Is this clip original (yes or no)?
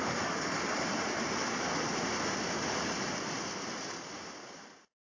yes